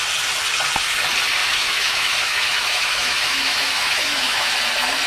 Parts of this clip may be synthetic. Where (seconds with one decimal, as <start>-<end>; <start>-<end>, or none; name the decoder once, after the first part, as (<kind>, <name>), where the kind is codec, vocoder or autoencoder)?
1.4-4.5 (autoencoder, DAC-VAE)